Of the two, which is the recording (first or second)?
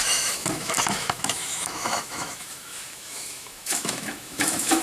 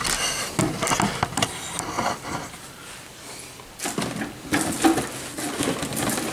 second